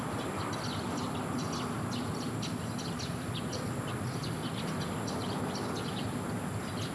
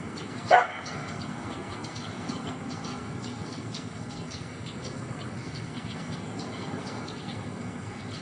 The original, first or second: first